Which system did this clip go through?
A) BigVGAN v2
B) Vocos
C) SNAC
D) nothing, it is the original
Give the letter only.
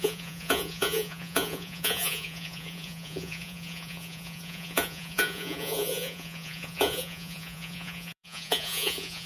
B